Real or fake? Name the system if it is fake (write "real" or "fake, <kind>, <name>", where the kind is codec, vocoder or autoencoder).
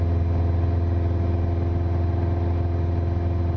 real